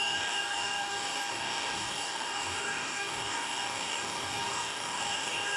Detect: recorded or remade remade